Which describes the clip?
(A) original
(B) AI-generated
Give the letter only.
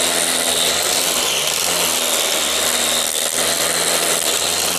A